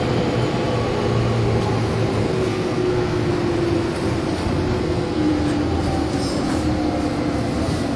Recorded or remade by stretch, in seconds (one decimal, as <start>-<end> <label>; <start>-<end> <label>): 0.0-2.2 recorded; 2.2-3.3 remade; 3.3-4.8 recorded; 4.8-5.3 remade; 5.3-8.0 recorded